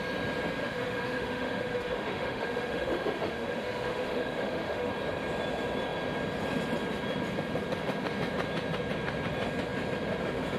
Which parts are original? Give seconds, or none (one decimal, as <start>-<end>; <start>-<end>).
0.0-0.6; 4.9-10.6